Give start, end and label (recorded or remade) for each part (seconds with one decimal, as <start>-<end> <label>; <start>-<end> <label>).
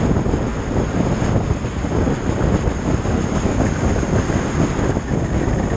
0.0-5.8 recorded